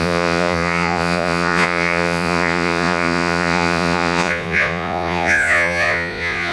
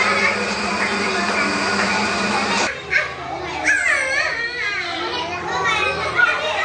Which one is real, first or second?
second